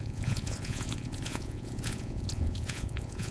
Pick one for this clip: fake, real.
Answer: fake